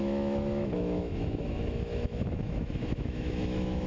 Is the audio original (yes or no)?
no